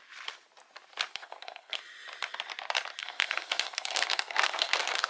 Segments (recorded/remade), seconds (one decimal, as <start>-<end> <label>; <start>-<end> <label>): 0.0-1.1 recorded; 1.1-1.8 remade; 1.8-3.0 recorded; 3.0-5.1 remade